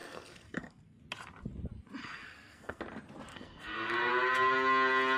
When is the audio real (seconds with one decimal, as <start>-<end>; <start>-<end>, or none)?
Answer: 1.0-2.0; 2.8-3.3; 4.1-5.2